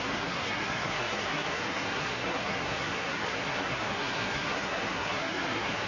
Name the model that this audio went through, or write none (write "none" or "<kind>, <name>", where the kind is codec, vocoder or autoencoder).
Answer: codec, SNAC